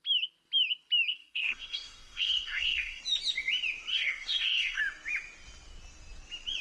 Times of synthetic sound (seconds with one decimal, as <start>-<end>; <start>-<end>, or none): 1.1-3.0; 3.9-4.8